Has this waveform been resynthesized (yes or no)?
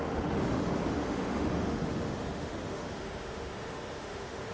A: yes